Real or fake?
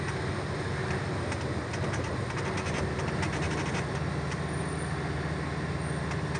real